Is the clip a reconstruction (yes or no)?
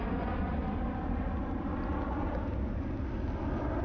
no